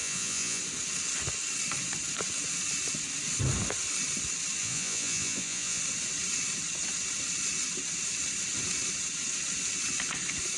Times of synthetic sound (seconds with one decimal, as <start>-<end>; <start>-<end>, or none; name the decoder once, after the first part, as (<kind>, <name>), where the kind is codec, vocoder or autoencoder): 0.0-0.6 (vocoder, Vocos); 4.6-5.8